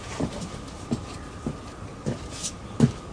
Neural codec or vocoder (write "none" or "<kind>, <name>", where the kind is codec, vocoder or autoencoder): none